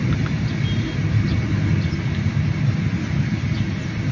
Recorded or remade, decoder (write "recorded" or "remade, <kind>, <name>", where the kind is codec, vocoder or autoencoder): recorded